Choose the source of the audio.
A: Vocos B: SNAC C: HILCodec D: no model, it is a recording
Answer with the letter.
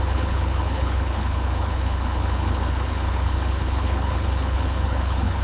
C